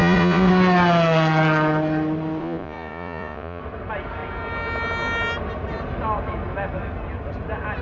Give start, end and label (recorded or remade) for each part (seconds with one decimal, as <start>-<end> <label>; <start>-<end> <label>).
0.0-0.5 remade; 0.5-2.4 recorded; 2.4-3.6 remade; 3.6-7.8 recorded